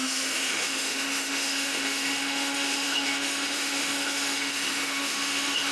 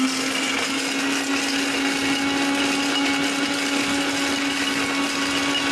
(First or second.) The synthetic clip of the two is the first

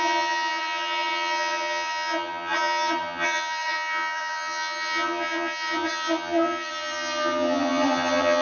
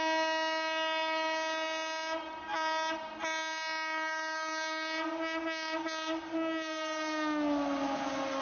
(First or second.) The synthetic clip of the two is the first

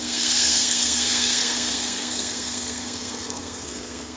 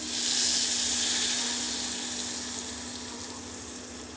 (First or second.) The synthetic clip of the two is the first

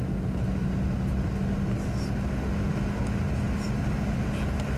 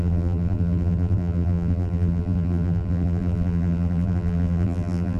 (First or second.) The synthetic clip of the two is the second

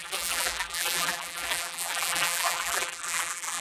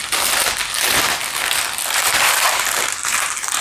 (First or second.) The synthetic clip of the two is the first